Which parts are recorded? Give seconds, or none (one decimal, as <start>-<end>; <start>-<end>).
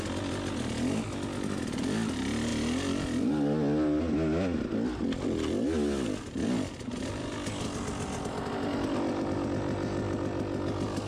0.0-11.1